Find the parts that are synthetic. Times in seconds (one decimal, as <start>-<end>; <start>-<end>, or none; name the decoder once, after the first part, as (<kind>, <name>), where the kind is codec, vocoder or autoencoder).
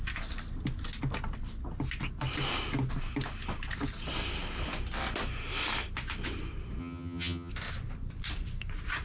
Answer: 6.8-7.5 (vocoder, HiFi-GAN)